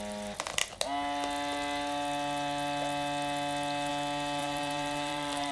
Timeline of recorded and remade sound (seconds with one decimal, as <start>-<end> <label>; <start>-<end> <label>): 0.0-4.4 recorded; 4.4-5.5 remade